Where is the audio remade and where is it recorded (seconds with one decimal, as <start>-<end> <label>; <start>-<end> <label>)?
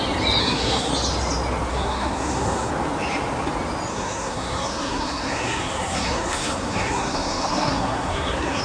0.0-0.4 recorded; 0.4-0.9 remade; 0.9-1.7 recorded; 1.7-2.7 remade; 2.7-3.9 recorded; 3.9-8.6 remade